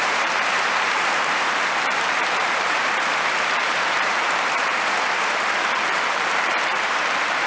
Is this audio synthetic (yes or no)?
yes